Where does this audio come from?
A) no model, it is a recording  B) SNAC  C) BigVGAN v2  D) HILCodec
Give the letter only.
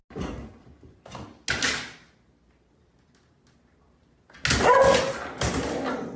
A